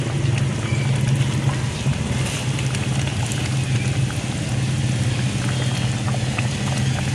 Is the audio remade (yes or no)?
no